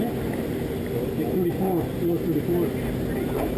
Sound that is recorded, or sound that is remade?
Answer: recorded